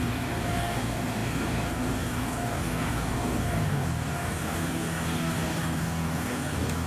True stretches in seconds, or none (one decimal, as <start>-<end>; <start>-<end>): none